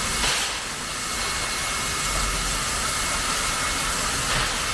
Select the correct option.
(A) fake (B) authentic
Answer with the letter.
B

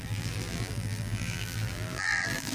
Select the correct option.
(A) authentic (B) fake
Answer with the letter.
B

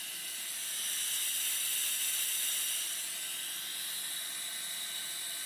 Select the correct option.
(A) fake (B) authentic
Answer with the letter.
B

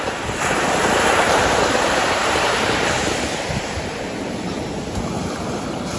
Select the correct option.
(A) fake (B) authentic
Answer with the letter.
A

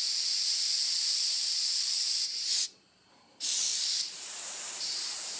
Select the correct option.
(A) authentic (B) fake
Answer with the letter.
B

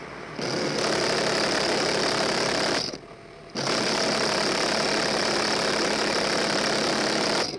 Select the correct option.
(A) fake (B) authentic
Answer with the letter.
B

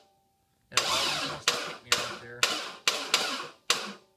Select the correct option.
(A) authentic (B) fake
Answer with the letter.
A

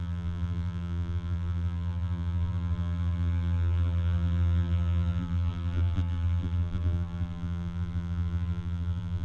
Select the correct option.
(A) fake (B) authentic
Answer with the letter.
A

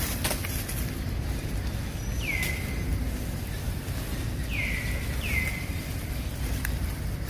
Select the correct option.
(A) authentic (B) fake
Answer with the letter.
A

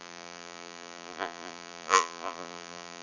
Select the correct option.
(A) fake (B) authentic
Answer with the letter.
A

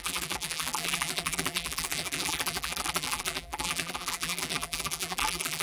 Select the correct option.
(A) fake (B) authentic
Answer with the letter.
A